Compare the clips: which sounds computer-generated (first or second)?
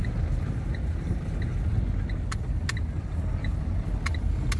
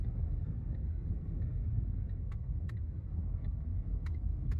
second